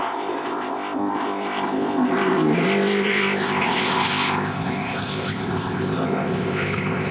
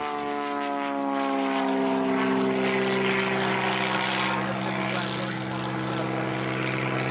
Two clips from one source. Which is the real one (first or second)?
second